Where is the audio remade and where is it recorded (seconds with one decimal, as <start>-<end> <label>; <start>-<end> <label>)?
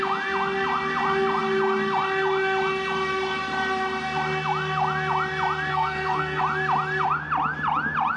0.0-5.7 recorded; 5.7-6.4 remade; 6.4-8.2 recorded